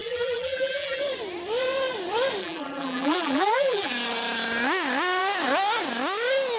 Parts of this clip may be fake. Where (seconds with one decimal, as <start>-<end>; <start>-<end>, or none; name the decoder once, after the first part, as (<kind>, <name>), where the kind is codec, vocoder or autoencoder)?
0.0-1.0 (vocoder, BigVGAN v2); 2.4-3.9